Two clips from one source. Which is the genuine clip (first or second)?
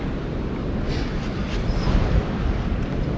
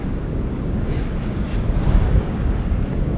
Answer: first